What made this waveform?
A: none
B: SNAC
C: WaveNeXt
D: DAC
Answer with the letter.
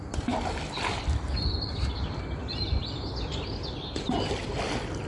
A